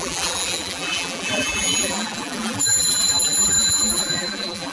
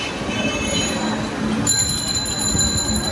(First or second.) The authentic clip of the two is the second